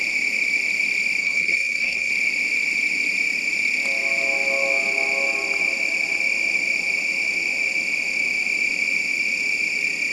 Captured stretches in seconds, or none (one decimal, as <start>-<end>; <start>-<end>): 0.0-1.2; 2.1-10.1